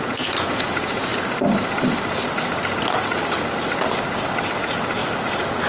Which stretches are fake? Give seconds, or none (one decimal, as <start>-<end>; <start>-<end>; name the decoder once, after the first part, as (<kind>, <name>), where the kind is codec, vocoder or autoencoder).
0.0-1.1 (vocoder, Vocos); 4.5-5.0